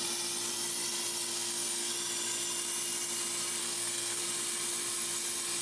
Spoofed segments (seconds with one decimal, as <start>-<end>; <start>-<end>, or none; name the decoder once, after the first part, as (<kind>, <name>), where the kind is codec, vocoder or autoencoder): 1.3-1.9 (codec, SNAC); 3.6-4.2